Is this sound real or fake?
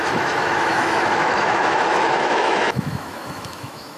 fake